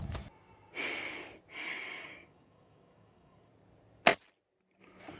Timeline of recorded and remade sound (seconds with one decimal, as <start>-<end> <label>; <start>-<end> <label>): 0.0-1.5 recorded; 1.5-3.5 remade; 3.5-5.2 recorded